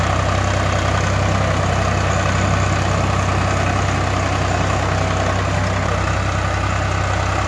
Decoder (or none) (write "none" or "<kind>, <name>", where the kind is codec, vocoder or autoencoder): none